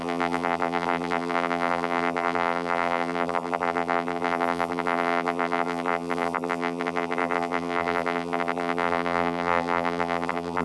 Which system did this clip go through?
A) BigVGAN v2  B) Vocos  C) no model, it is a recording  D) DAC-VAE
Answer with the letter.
A